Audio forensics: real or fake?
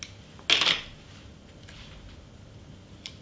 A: real